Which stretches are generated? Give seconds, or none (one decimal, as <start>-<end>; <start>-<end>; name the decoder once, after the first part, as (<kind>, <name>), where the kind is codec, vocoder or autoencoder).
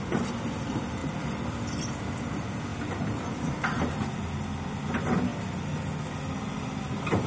1.0-1.9 (vocoder, BigVGAN v2); 2.7-3.4